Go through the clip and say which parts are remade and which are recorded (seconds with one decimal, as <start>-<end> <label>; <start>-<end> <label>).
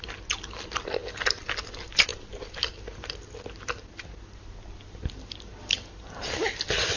0.0-7.0 recorded